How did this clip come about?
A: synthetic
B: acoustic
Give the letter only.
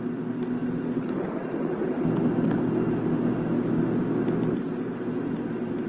B